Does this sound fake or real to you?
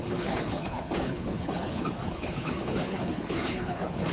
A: fake